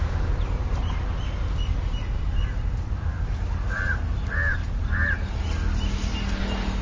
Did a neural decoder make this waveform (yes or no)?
no